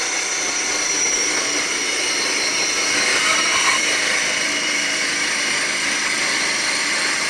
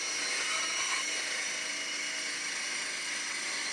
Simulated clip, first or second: first